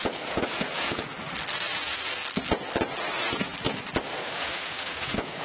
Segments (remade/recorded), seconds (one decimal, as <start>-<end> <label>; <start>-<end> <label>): 0.0-1.1 remade; 1.1-1.7 recorded; 1.7-2.2 remade; 2.2-3.0 recorded; 3.0-3.5 remade; 3.5-4.2 recorded; 4.2-5.4 remade